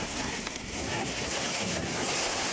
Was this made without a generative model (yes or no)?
no